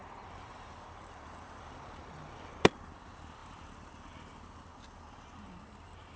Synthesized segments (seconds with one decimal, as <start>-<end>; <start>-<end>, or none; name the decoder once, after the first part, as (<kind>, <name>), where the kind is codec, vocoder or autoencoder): 0.0-3.0 (vocoder, BigVGAN v2)